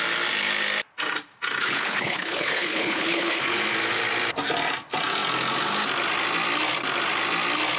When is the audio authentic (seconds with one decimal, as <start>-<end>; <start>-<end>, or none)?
0.0-1.6; 3.4-7.8